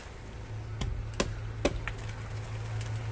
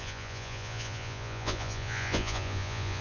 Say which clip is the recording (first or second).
first